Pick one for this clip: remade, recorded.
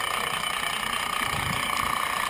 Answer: recorded